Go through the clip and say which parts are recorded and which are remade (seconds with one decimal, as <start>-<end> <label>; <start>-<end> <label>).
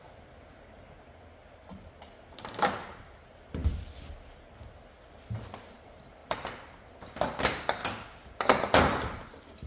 0.0-3.6 remade; 3.6-5.2 recorded; 5.2-7.8 remade; 7.8-8.8 recorded; 8.8-9.7 remade